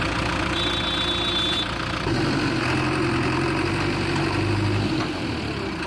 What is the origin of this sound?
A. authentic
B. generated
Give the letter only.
B